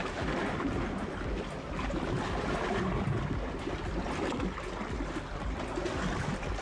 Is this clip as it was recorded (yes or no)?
yes